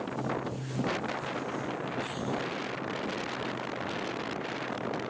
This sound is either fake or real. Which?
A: real